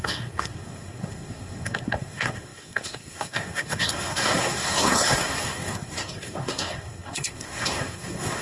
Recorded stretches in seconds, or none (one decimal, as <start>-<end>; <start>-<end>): none